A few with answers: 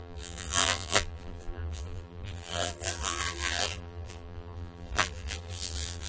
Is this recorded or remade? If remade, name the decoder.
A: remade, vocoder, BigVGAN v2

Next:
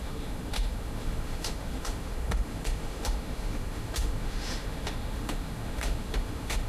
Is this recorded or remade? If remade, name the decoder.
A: remade, autoencoder, DAC-VAE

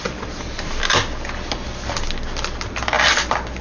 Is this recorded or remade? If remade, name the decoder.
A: recorded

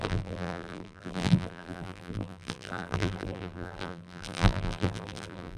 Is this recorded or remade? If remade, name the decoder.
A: remade, vocoder, BigVGAN v2